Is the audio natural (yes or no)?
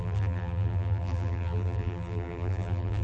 no